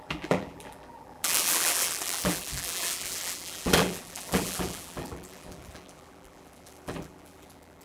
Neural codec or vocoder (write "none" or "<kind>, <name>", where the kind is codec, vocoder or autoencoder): vocoder, BigVGAN v2